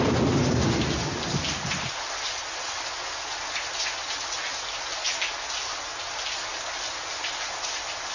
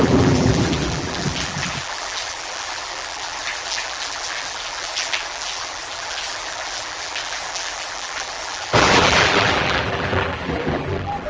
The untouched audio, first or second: first